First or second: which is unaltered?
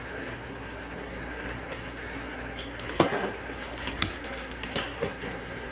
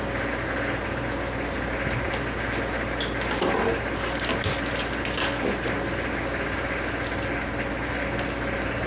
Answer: second